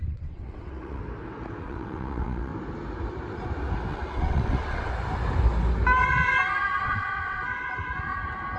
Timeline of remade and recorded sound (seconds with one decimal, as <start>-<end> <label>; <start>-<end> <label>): 0.0-1.0 remade; 1.0-1.6 recorded; 1.6-2.5 remade; 2.5-3.9 recorded; 3.9-4.9 remade; 4.9-6.8 recorded; 6.8-7.4 remade; 7.4-8.6 recorded

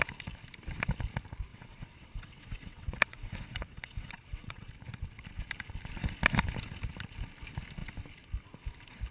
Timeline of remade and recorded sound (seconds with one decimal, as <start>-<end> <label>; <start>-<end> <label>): 0.0-1.5 recorded; 1.5-4.7 remade; 4.7-9.1 recorded